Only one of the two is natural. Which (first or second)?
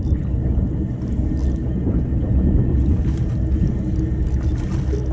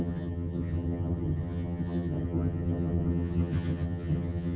first